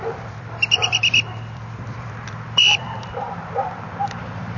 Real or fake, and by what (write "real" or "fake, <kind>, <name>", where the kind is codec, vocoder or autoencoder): fake, vocoder, BigVGAN v2